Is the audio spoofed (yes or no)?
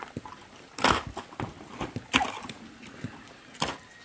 no